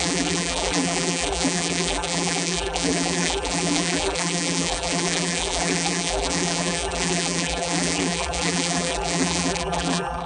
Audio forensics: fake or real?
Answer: fake